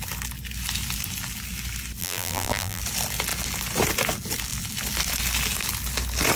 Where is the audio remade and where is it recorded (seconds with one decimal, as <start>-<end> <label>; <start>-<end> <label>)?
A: 0.0-2.0 recorded; 2.0-2.8 remade; 2.8-6.4 recorded